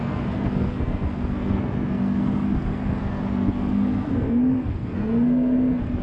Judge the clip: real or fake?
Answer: fake